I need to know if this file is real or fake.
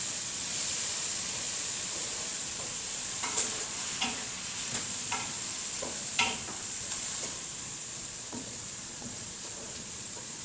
fake